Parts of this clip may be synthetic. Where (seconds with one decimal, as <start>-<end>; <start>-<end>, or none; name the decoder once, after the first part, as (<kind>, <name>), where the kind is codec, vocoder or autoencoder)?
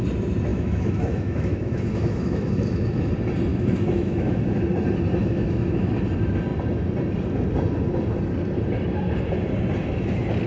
0.5-3.1 (autoencoder, DAC-VAE); 3.5-4.4; 5.2-5.9